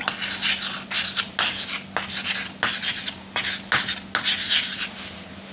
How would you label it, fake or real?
real